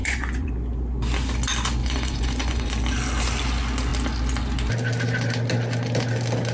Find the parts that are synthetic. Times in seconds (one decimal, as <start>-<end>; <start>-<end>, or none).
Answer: 0.0-0.5; 1.8-2.7